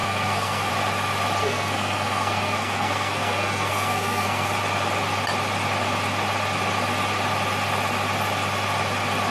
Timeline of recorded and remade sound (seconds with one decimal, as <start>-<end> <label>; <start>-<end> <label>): 0.0-0.7 remade; 0.7-1.4 recorded; 1.4-4.5 remade; 4.5-9.3 recorded